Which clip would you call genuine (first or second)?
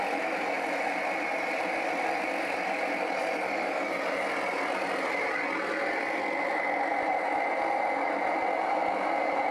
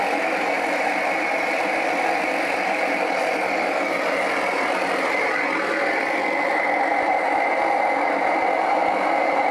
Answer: first